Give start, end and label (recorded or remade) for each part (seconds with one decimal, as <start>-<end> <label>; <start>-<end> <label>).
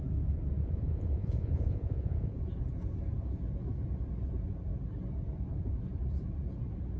0.0-0.6 recorded; 0.6-2.4 remade; 2.4-7.0 recorded